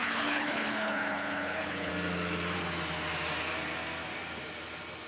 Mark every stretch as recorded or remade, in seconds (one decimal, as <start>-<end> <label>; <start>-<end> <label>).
0.0-1.9 remade; 1.9-5.1 recorded